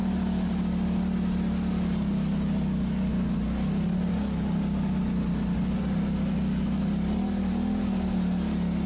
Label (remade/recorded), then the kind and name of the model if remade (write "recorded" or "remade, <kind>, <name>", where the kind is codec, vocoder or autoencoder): recorded